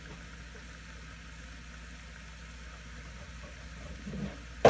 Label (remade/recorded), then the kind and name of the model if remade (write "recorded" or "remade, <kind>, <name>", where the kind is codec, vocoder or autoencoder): recorded